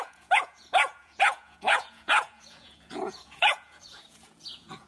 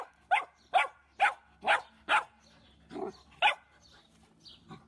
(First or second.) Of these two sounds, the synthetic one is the first